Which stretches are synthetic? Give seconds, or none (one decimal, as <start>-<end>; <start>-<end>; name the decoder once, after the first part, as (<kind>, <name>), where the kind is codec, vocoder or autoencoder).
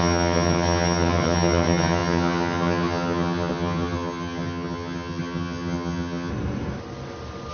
0.0-6.3 (vocoder, HiFi-GAN)